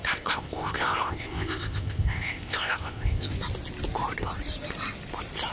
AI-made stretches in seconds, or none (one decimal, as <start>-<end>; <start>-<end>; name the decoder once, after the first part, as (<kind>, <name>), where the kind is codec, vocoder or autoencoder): 0.0-3.3 (codec, ZipCodec)